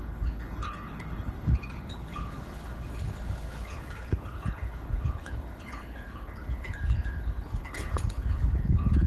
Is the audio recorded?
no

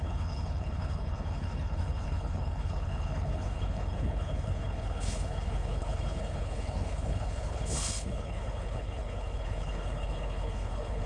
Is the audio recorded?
no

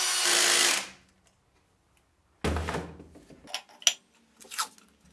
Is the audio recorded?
yes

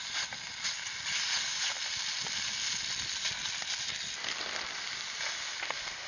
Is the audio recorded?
yes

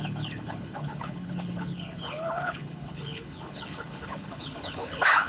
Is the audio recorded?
no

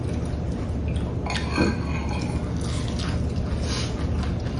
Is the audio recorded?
yes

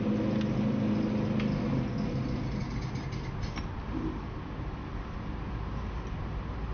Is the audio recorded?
yes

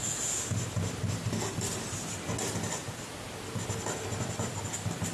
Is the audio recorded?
yes